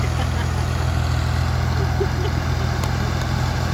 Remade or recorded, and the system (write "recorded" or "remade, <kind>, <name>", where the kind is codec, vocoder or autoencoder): recorded